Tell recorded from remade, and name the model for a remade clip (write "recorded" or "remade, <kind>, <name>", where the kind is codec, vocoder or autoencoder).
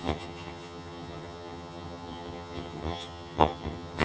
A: remade, vocoder, HiFi-GAN